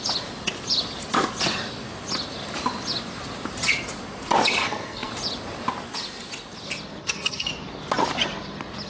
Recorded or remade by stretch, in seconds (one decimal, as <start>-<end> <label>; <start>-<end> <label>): 0.0-4.6 recorded; 4.6-5.1 remade; 5.1-7.0 recorded; 7.0-7.5 remade; 7.5-8.9 recorded